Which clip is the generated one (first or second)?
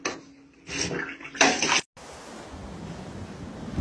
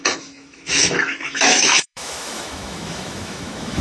second